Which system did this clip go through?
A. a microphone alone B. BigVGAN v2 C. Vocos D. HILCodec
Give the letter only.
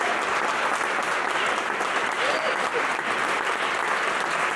A